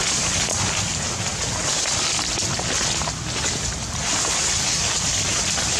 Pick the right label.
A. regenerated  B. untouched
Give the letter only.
B